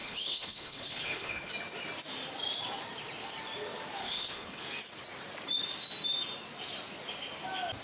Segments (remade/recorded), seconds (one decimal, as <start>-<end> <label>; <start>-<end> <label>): 0.0-1.5 remade; 1.5-4.0 recorded; 4.0-4.6 remade; 4.6-7.8 recorded